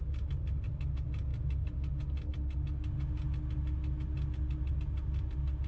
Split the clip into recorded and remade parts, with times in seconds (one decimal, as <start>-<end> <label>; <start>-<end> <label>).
0.0-5.7 recorded